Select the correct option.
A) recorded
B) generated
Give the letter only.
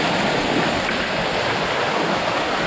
A